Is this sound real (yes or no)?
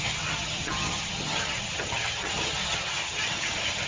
no